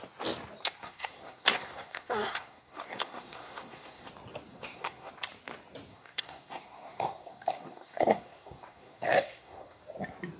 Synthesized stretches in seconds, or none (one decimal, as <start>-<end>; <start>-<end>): 0.8-4.1; 4.5-5.1; 5.9-9.8